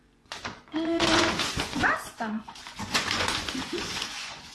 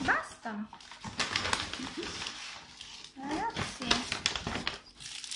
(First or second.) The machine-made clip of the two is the first